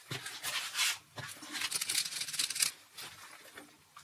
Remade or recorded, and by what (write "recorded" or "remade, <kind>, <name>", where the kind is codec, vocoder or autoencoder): recorded